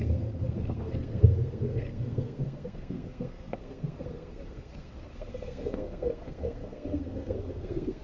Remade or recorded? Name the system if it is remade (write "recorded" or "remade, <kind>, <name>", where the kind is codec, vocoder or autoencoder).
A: remade, codec, SNAC